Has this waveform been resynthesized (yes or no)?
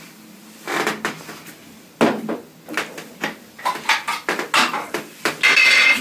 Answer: no